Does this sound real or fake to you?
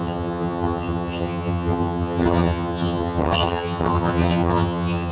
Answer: fake